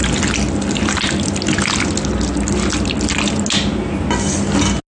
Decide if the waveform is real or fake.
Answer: real